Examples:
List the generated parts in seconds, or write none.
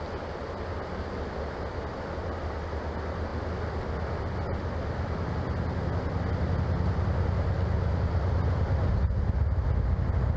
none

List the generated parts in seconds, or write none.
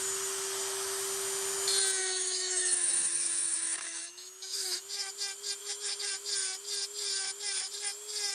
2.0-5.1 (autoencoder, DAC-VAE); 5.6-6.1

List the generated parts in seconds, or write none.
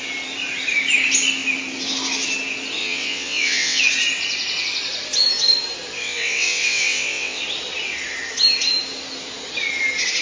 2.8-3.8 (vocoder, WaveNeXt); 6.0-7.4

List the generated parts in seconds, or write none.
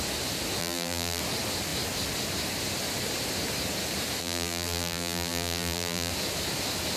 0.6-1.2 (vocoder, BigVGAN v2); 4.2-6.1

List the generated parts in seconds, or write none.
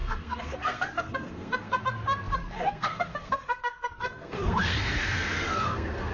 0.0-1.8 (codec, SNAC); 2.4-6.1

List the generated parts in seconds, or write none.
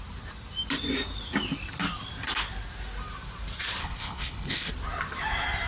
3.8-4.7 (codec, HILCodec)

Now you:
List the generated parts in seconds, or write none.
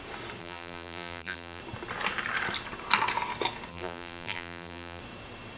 0.4-1.6 (vocoder, BigVGAN v2); 3.7-5.0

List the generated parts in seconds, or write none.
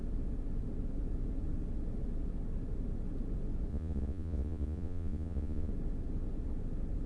3.7-5.7 (vocoder, Vocos)